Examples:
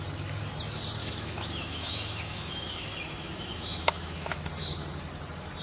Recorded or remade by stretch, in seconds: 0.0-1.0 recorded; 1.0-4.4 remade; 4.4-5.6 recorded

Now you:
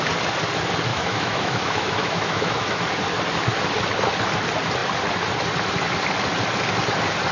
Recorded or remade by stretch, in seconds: 0.0-0.9 recorded; 0.9-2.9 remade; 2.9-7.3 recorded